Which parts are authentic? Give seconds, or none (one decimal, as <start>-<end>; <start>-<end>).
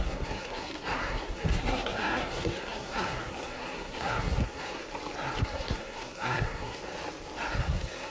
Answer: 4.8-5.4; 6.8-7.6